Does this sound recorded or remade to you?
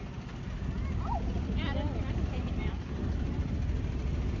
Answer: recorded